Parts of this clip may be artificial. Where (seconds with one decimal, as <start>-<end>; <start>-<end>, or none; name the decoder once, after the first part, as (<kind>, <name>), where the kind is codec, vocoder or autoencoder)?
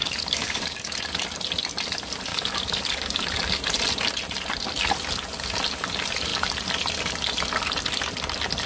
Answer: 0.0-0.8 (codec, DAC); 2.3-3.2